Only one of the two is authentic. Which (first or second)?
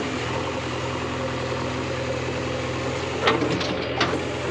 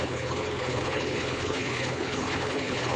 first